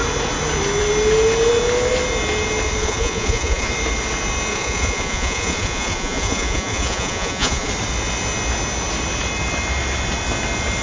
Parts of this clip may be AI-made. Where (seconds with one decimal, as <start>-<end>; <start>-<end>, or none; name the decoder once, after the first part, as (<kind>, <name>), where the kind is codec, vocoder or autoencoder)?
2.8-3.7 (vocoder, Vocos); 4.5-7.7